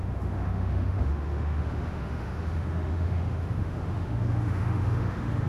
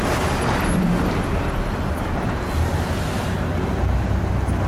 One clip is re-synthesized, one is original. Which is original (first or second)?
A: second